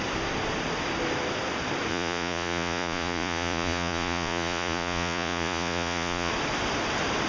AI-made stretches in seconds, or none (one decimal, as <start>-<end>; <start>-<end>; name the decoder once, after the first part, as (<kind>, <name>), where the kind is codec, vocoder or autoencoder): 1.9-6.3 (vocoder, Vocos)